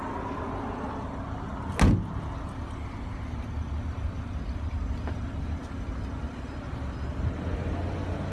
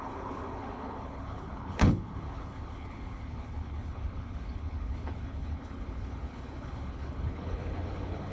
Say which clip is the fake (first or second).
second